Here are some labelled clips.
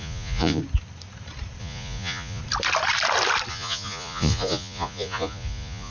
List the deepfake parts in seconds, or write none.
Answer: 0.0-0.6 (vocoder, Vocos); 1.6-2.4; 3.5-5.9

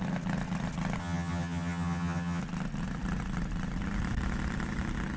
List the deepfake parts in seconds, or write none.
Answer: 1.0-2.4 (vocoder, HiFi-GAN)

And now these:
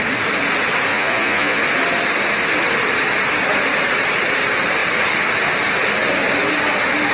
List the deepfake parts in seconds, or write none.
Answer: 0.9-1.6 (vocoder, Vocos)

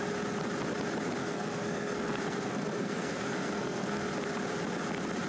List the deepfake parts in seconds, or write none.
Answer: 1.2-4.1 (codec, SNAC)

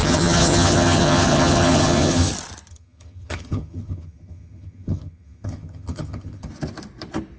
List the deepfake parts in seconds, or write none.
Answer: 0.0-2.3 (vocoder, HiFi-GAN); 2.7-6.5

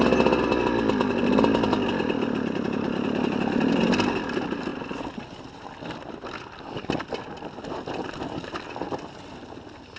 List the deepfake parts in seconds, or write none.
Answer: none